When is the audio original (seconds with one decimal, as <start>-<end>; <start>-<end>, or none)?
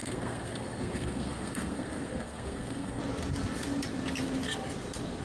3.0-5.2